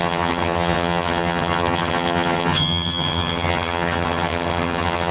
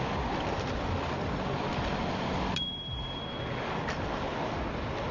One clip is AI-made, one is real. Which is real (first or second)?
second